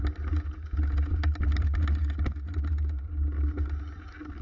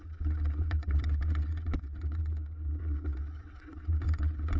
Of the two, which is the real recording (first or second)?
first